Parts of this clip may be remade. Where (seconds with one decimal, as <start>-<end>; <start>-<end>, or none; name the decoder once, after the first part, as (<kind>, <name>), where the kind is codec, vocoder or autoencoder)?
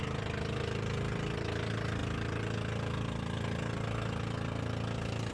none